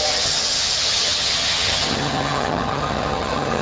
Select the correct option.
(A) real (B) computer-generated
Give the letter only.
B